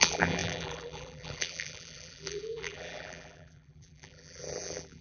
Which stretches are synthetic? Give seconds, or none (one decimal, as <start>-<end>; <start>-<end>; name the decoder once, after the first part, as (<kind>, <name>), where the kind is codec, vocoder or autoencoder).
0.0-5.0 (vocoder, BigVGAN v2)